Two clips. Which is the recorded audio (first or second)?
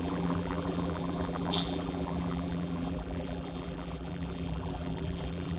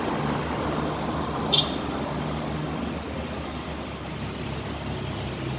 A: second